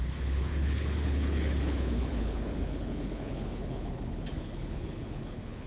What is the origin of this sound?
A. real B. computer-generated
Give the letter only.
B